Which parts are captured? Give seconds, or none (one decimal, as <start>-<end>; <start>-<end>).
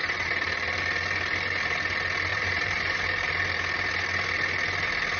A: 0.0-2.3; 3.3-5.2